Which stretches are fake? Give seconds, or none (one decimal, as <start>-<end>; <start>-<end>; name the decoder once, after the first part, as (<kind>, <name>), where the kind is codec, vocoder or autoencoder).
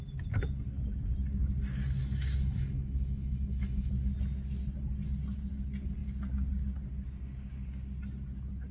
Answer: 2.0-3.9 (autoencoder, DAC-VAE)